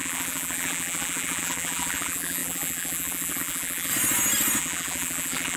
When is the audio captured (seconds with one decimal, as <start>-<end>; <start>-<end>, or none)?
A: 3.9-4.6